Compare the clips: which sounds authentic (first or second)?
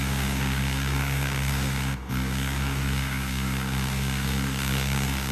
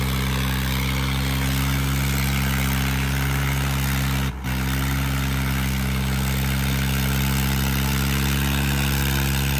second